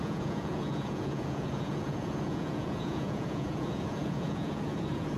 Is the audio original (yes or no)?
no